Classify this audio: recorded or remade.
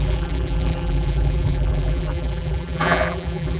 remade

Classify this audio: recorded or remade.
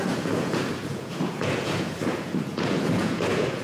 remade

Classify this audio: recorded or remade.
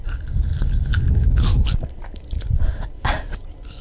recorded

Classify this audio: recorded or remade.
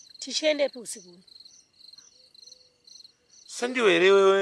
recorded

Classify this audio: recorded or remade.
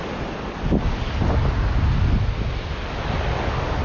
recorded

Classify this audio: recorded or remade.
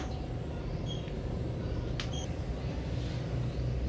recorded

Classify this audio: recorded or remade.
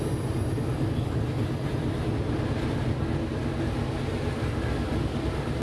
recorded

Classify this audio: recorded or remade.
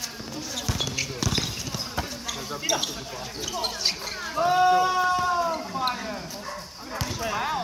recorded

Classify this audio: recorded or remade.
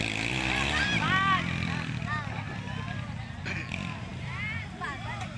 recorded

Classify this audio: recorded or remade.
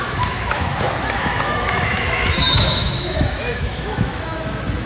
remade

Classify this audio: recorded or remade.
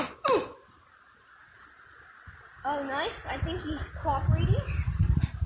recorded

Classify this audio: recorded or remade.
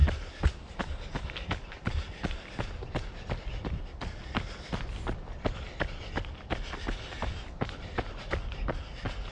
recorded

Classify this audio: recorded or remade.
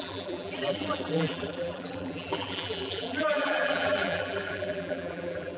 remade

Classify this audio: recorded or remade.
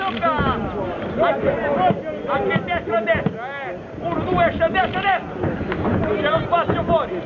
recorded